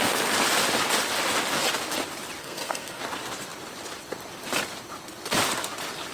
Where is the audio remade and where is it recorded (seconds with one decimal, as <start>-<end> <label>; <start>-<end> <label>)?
0.0-2.4 recorded; 2.4-3.0 remade; 3.0-6.1 recorded